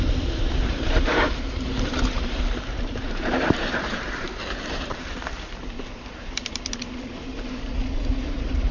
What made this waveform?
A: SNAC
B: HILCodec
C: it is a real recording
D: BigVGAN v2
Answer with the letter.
D